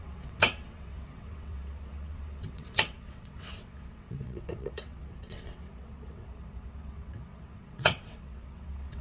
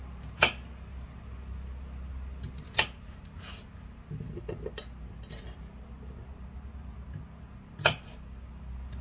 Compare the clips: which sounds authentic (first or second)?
second